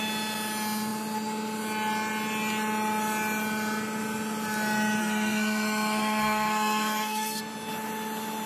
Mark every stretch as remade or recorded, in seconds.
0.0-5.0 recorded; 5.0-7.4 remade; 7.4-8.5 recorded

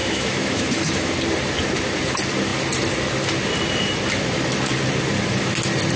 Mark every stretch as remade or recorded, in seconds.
0.0-1.1 remade; 1.1-6.0 recorded

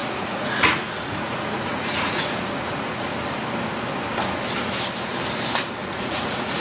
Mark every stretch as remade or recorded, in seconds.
0.0-3.1 remade; 3.1-5.9 recorded; 5.9-6.6 remade

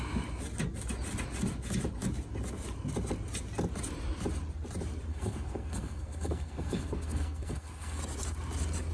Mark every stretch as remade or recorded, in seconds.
0.0-5.1 recorded; 5.1-8.0 remade; 8.0-8.9 recorded

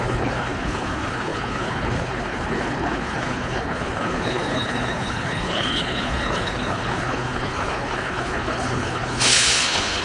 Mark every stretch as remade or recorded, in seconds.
0.0-10.0 remade

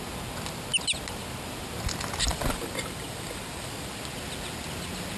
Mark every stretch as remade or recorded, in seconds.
0.0-2.3 recorded; 2.3-3.9 remade; 3.9-5.2 recorded

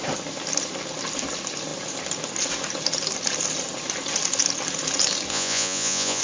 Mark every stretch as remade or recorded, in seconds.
0.0-5.3 recorded; 5.3-6.2 remade

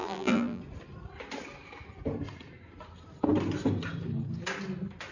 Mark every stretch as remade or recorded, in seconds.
0.0-0.6 remade; 0.6-5.1 recorded